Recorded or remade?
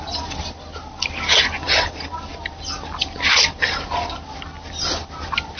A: recorded